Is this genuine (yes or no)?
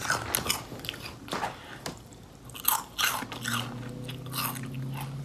yes